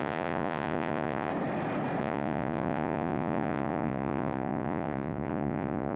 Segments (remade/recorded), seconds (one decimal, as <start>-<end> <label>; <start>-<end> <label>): 0.0-1.3 remade; 1.3-2.0 recorded; 2.0-6.0 remade